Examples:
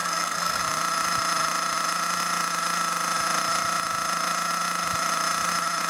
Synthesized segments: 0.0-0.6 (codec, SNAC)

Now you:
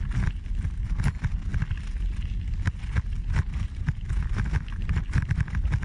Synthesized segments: none

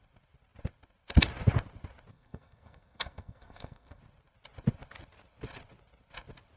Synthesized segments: 2.1-4.0 (codec, SNAC)

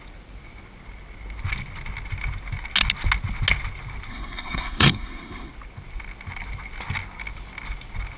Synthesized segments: 4.1-5.5 (codec, SNAC)

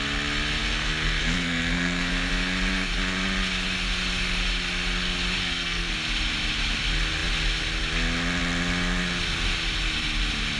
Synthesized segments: 0.6-2.3 (codec, SNAC); 5.4-5.9

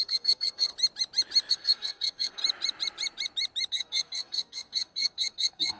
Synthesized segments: 0.0-0.7 (codec, SNAC); 1.5-2.4; 3.7-5.8

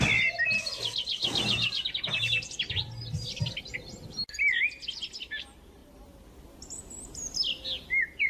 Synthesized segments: none